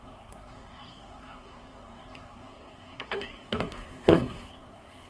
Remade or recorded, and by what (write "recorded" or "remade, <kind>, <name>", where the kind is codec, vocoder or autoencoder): remade, codec, SNAC